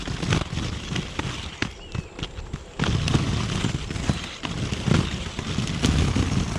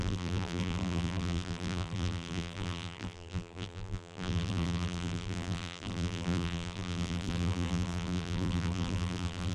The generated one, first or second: second